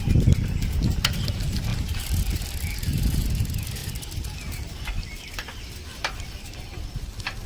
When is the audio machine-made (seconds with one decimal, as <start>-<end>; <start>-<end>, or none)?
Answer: 1.7-3.0; 5.9-7.0